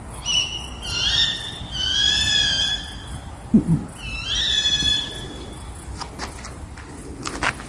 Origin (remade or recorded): recorded